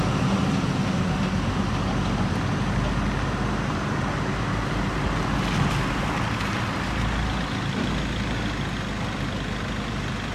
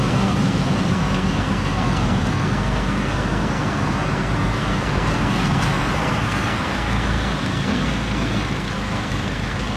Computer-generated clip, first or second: second